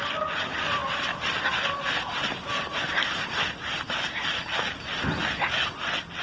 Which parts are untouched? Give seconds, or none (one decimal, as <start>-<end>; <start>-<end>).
0.0-6.2